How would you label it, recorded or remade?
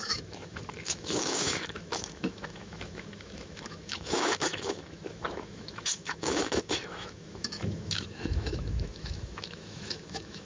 remade